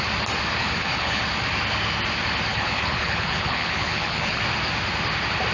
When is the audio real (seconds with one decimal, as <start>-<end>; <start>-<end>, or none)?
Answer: 0.0-0.6; 1.2-2.5; 4.4-5.5